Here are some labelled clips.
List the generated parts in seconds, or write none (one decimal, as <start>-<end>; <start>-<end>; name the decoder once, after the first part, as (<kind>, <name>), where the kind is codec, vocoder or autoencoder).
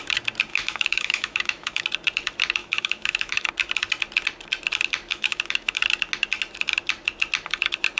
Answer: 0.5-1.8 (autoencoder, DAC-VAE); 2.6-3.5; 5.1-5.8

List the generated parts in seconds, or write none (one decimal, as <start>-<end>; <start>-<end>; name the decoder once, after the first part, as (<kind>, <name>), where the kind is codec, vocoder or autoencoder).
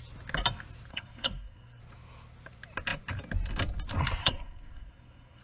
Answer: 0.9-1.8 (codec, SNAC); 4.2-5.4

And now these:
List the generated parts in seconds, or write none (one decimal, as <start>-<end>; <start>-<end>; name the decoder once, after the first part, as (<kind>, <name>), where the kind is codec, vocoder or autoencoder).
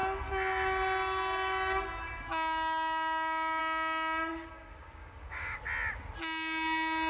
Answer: 4.3-5.6 (codec, DAC)